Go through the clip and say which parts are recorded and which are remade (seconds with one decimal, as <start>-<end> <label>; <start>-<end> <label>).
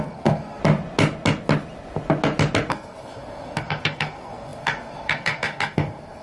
0.0-0.6 remade; 0.6-2.7 recorded; 2.7-6.2 remade